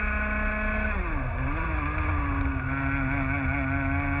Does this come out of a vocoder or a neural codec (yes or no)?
no